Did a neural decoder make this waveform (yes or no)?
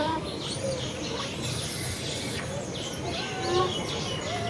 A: no